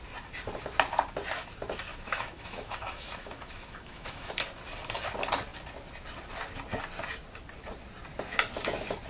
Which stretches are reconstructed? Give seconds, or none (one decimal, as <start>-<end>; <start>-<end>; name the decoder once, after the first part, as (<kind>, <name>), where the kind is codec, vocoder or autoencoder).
1.9-4.3 (autoencoder, DAC-VAE)